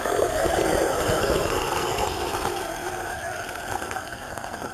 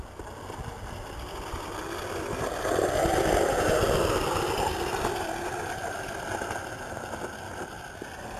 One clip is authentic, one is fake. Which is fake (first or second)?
first